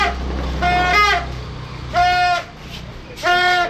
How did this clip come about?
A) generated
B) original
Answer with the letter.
B